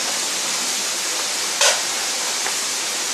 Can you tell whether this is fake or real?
real